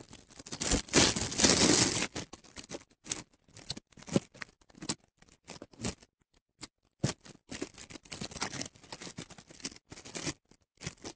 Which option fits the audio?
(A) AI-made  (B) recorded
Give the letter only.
B